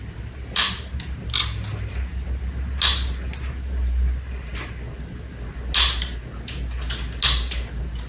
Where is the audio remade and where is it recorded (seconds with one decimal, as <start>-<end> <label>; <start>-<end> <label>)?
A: 0.0-8.1 recorded